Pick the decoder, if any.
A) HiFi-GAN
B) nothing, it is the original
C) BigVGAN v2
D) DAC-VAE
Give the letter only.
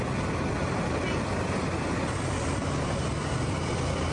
B